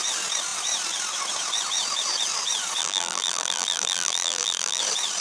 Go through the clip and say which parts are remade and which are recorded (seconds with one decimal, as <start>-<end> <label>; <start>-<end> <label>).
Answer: 0.0-2.8 recorded; 2.8-4.8 remade; 4.8-5.2 recorded